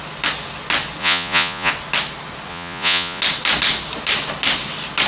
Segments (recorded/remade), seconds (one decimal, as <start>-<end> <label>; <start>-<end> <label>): 0.0-1.0 recorded; 1.0-1.7 remade; 1.7-2.5 recorded; 2.5-3.2 remade; 3.2-5.1 recorded